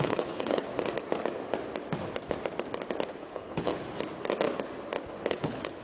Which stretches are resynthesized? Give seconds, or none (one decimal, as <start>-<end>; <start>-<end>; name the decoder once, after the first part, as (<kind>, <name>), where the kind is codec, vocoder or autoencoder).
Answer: 0.0-0.7 (codec, HILCodec); 3.2-3.7; 5.3-5.8